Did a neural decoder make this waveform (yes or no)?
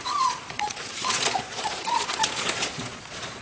yes